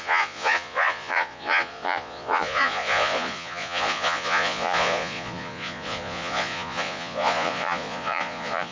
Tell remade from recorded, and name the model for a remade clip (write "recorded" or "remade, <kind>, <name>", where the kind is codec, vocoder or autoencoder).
remade, vocoder, Vocos